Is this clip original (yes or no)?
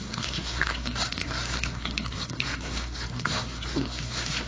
no